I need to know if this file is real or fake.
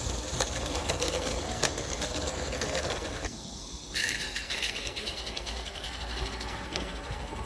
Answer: fake